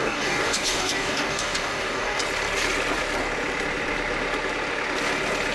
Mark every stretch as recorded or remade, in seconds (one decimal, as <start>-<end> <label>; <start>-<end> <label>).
0.0-2.2 remade; 2.2-5.5 recorded